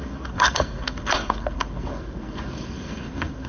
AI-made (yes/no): yes